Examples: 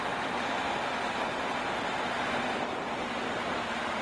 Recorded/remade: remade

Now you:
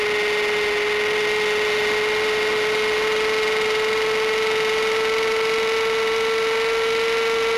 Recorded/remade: recorded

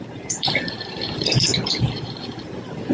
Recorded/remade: remade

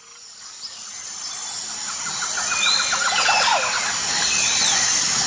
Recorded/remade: recorded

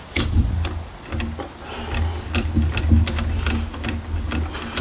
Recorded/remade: recorded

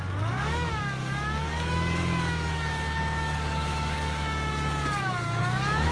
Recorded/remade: remade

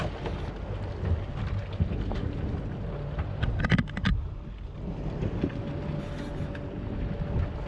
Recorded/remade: recorded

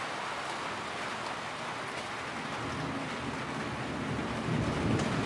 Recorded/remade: recorded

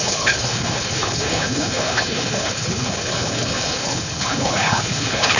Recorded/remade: remade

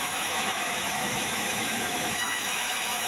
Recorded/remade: remade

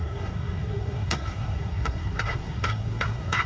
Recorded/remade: remade